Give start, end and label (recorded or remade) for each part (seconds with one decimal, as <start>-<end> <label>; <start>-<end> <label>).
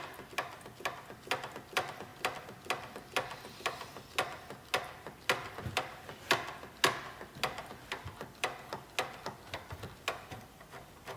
0.0-11.2 recorded